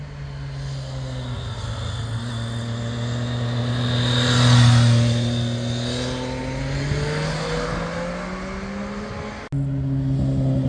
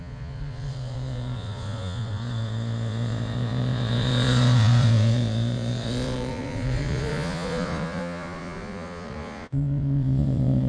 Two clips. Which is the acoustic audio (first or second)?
first